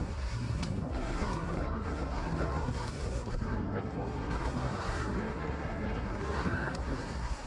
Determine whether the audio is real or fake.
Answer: fake